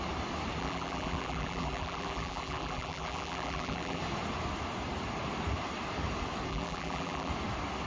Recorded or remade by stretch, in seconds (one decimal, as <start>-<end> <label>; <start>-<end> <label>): 0.0-0.6 recorded; 0.6-4.0 remade; 4.0-6.5 recorded; 6.5-7.3 remade; 7.3-7.9 recorded